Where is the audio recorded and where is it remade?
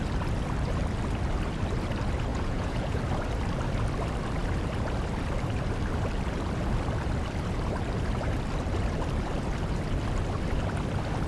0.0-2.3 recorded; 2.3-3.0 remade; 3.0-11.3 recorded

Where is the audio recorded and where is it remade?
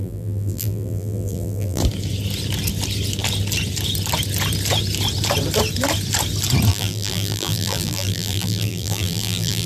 0.0-1.8 remade; 1.8-6.7 recorded; 6.7-9.7 remade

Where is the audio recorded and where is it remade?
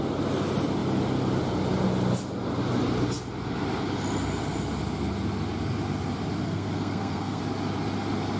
0.0-6.4 recorded; 6.4-7.4 remade; 7.4-8.4 recorded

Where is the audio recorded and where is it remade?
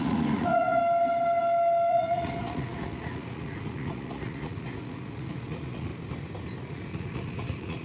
0.0-0.8 remade; 0.8-1.9 recorded; 1.9-5.9 remade; 5.9-6.7 recorded; 6.7-7.8 remade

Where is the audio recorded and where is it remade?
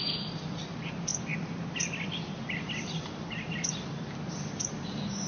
0.0-5.3 recorded